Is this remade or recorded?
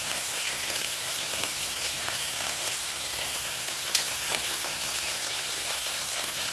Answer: remade